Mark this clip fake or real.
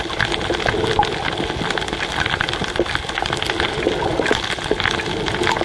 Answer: real